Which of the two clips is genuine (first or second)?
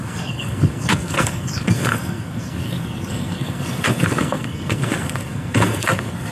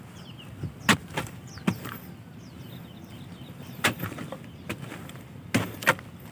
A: second